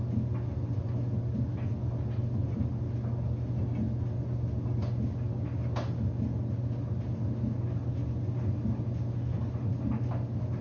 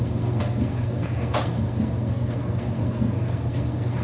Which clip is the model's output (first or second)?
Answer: second